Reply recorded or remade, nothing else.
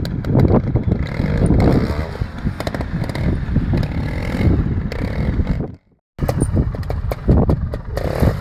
recorded